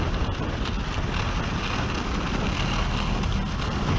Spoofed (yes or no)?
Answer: no